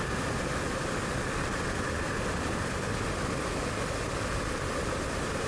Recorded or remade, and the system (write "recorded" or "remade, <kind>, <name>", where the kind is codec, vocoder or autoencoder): recorded